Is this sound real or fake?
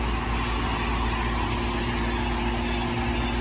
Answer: real